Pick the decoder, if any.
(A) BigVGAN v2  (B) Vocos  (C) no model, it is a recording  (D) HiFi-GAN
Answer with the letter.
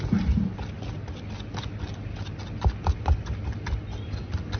C